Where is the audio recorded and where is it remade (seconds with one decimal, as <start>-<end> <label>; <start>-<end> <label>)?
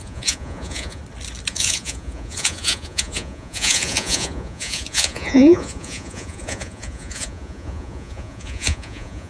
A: 0.0-1.0 remade; 1.0-1.5 recorded; 1.5-9.3 remade